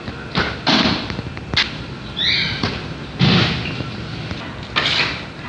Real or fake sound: real